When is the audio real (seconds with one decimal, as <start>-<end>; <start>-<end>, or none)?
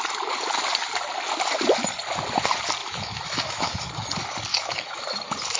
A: 0.0-2.8; 3.9-4.5; 5.0-5.6